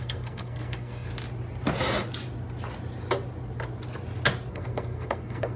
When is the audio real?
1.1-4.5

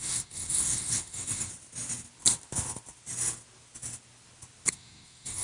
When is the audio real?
1.5-4.7

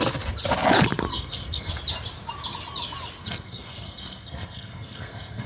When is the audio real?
0.0-1.1; 1.7-3.2

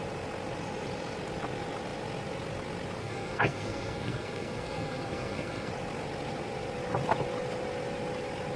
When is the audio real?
0.0-3.0; 5.7-8.6

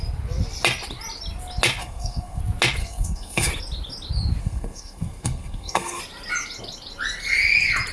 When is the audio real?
0.0-1.8; 2.4-2.8; 3.5-4.4; 6.0-7.9

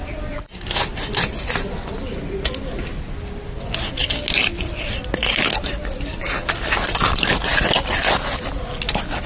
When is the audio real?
0.0-9.3

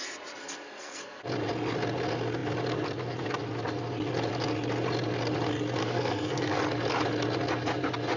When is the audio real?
0.0-0.4; 1.2-5.8; 6.6-8.2